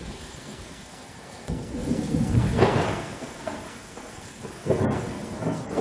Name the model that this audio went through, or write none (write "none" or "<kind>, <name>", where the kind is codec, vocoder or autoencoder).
codec, SNAC